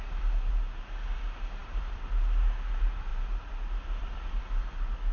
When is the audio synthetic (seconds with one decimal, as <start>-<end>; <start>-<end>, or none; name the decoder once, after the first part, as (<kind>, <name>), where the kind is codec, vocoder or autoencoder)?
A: none

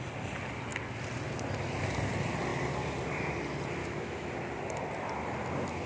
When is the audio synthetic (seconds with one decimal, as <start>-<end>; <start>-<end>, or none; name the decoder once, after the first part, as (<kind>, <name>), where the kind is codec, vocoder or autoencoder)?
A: 3.8-4.3 (autoencoder, DAC-VAE)